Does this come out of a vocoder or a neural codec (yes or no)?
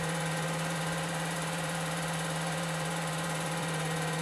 yes